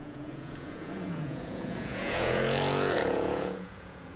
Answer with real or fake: fake